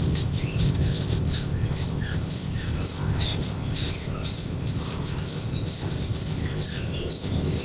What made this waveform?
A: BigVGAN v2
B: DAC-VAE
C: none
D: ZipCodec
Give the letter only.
D